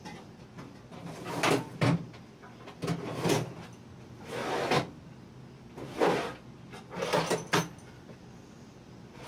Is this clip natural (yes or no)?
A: yes